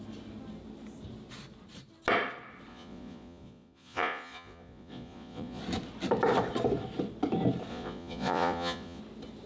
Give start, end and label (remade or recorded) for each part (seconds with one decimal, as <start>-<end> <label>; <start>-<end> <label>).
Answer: 0.0-2.7 recorded; 2.7-5.6 remade; 5.6-7.7 recorded; 7.7-9.0 remade; 9.0-9.5 recorded